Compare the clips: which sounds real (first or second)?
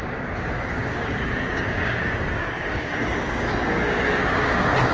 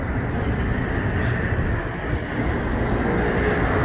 second